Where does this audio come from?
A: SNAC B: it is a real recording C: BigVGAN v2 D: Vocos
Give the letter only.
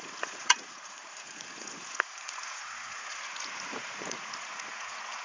D